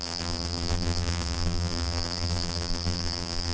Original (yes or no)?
no